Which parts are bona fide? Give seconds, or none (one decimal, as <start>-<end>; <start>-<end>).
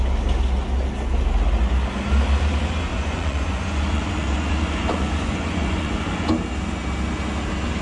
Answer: 0.0-2.9; 6.3-7.8